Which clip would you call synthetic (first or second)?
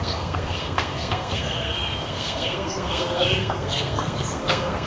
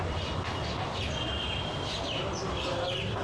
first